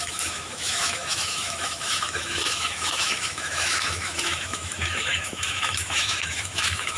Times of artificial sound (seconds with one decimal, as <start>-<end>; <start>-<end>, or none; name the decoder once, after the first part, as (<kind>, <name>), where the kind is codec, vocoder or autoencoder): 0.0-7.0 (autoencoder, DAC-VAE)